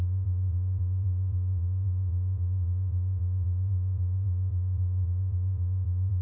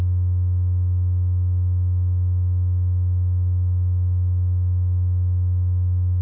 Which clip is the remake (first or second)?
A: first